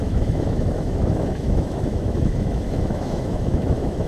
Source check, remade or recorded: remade